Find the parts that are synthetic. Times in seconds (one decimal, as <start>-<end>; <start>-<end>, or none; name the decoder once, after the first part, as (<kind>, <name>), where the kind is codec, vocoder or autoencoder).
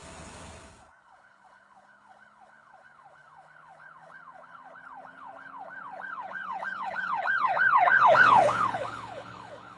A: 1.0-9.8 (codec, HILCodec)